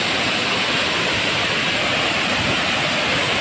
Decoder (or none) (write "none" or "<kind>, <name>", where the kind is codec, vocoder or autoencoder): none